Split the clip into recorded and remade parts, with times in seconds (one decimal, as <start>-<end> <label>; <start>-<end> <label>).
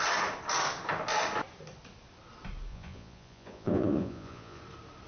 0.0-2.7 recorded; 2.7-4.6 remade; 4.6-5.1 recorded